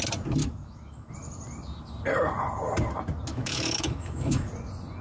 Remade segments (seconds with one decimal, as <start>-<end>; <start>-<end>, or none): 0.4-1.1; 3.3-4.5